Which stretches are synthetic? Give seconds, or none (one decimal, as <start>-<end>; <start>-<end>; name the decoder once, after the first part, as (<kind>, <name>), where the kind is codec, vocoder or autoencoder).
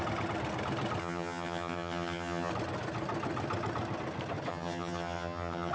1.0-2.5 (vocoder, HiFi-GAN); 4.5-5.7